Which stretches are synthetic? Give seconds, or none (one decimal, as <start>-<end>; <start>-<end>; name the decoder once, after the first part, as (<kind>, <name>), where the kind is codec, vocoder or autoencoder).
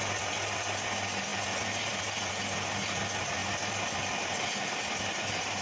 none